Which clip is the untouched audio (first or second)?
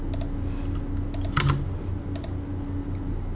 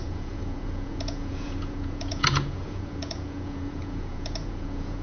first